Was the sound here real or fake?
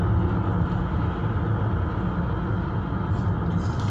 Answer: real